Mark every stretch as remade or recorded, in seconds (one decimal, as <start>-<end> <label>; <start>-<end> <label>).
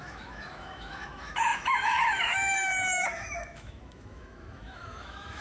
0.0-5.4 remade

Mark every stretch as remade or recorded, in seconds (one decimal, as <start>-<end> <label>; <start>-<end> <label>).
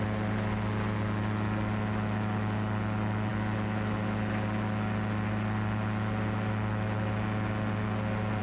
0.0-8.4 recorded